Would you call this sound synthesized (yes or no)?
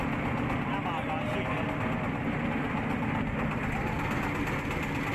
no